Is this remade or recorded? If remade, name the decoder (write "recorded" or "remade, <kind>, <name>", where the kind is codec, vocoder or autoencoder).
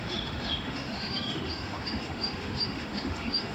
remade, autoencoder, DAC-VAE